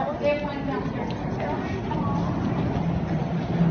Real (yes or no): yes